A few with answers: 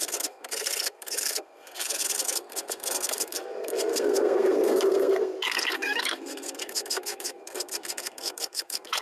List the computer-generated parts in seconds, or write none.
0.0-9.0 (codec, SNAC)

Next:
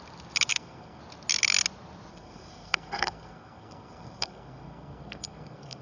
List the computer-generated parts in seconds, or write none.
0.5-1.0 (codec, SNAC); 2.1-5.8